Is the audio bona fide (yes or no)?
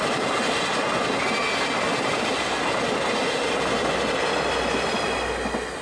yes